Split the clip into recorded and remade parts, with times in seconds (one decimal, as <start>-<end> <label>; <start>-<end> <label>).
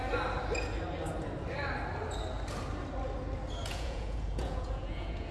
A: 0.0-3.6 recorded; 3.6-5.3 remade